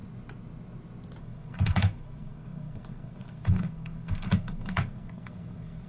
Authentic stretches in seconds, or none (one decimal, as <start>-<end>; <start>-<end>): 0.0-1.2